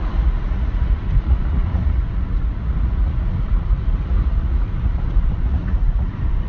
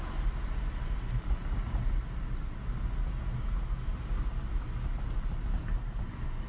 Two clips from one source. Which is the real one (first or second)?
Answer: second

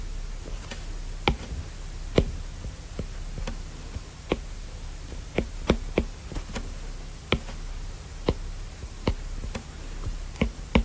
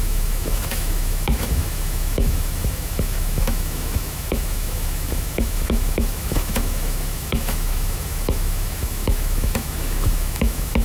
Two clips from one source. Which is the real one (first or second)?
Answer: first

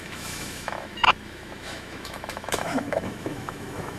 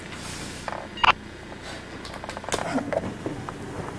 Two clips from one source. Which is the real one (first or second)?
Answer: second